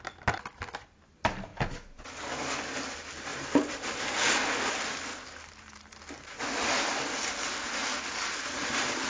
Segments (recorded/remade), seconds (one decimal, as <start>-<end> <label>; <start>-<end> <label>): 0.0-3.3 recorded; 3.3-4.0 remade; 4.0-5.1 recorded; 5.1-6.0 remade; 6.0-9.1 recorded